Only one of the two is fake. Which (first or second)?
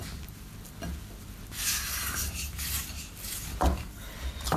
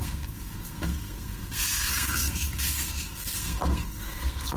second